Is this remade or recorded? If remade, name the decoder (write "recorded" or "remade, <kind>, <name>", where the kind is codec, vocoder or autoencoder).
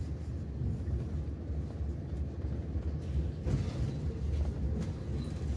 recorded